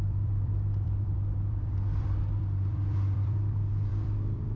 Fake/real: fake